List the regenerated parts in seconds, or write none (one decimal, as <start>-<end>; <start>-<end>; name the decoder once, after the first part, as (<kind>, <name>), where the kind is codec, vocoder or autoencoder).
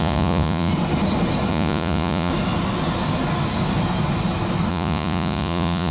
0.0-0.7 (vocoder, Vocos); 1.5-2.3; 4.7-5.9